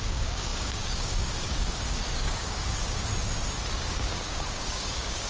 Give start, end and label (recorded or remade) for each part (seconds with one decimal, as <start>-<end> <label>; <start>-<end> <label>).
0.0-3.1 remade; 3.1-3.7 recorded; 3.7-5.3 remade